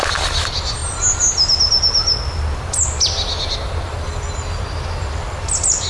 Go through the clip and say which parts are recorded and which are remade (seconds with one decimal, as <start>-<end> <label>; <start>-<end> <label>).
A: 0.0-5.9 recorded